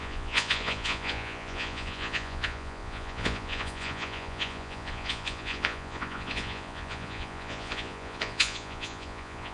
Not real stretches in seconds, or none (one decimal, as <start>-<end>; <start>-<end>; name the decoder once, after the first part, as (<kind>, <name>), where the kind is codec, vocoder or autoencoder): 0.0-9.5 (vocoder, Vocos)